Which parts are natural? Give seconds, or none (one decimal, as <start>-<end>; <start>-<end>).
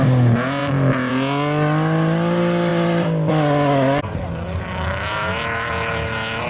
0.0-6.5